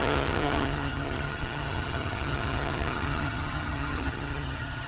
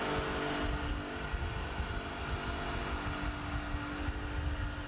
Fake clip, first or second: first